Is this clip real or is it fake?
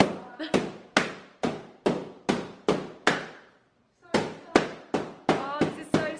real